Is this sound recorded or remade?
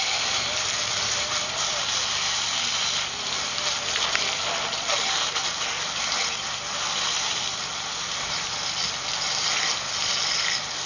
remade